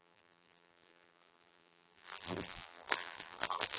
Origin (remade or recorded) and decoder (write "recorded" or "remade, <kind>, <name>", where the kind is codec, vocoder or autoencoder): remade, vocoder, BigVGAN v2